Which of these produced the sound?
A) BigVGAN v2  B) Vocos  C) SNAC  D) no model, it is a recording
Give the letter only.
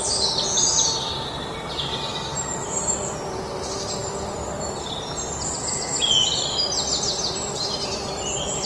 D